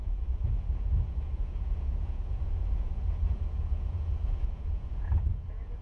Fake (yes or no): yes